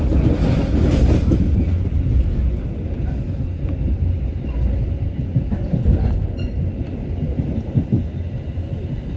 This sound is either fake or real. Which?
real